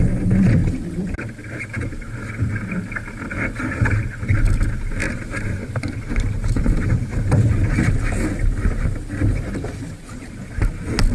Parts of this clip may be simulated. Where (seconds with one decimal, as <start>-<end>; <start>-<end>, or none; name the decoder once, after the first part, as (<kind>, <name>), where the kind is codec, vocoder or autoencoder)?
5.0-7.4 (vocoder, BigVGAN v2)